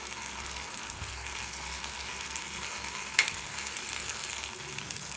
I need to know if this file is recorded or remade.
remade